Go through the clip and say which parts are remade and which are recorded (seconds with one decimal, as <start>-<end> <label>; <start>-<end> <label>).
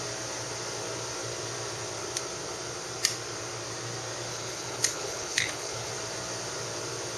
0.0-4.3 recorded; 4.3-5.9 remade; 5.9-7.2 recorded